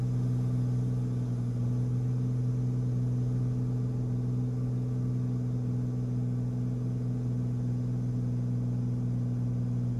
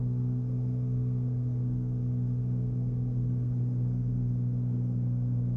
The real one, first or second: first